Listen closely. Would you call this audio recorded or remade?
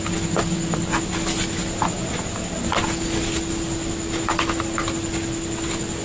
recorded